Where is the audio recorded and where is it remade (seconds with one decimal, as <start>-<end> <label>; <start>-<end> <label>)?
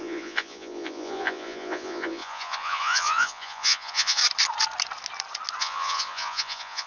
0.0-4.2 remade; 4.2-5.6 recorded; 5.6-6.9 remade